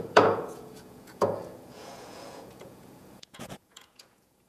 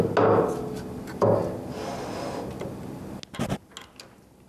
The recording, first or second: second